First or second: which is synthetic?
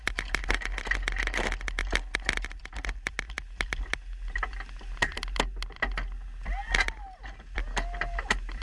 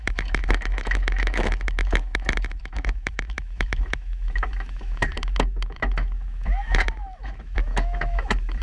second